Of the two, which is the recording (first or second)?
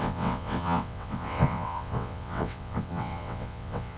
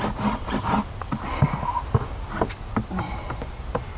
second